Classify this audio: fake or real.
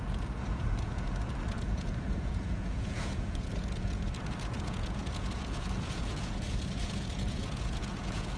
fake